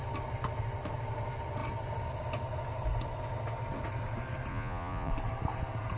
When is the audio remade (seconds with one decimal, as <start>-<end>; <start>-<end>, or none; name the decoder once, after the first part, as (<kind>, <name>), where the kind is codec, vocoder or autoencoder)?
4.5-5.1 (vocoder, Vocos)